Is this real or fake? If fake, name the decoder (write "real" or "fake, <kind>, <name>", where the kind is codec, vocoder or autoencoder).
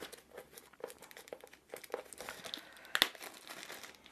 real